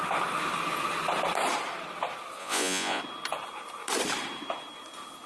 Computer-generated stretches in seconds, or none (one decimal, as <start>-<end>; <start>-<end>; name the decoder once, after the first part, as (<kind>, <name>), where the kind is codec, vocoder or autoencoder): 2.4-3.0 (vocoder, Vocos)